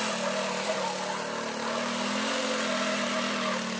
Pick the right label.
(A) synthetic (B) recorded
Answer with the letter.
B